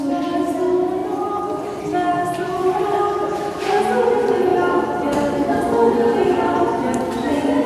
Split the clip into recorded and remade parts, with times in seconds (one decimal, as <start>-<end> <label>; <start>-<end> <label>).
0.0-4.5 recorded; 4.5-7.0 remade; 7.0-7.7 recorded